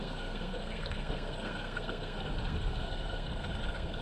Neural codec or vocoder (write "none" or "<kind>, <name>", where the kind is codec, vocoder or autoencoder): codec, SNAC